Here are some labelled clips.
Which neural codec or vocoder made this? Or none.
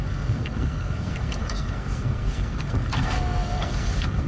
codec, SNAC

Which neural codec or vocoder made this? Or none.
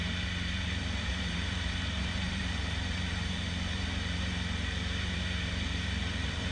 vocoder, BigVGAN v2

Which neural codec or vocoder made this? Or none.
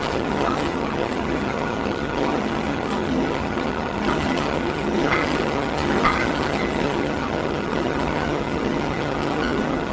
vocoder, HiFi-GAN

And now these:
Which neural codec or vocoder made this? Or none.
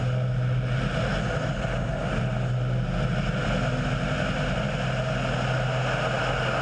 none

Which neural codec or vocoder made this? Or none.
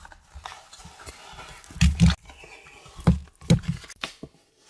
none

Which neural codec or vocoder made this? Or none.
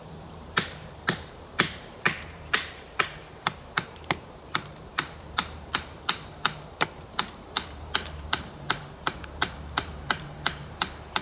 vocoder, BigVGAN v2